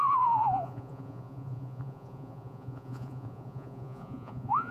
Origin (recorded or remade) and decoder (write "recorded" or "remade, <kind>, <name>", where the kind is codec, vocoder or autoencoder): remade, vocoder, Vocos